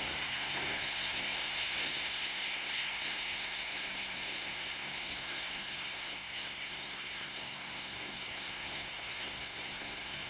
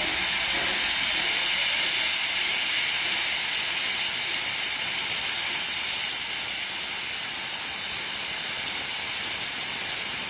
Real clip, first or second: second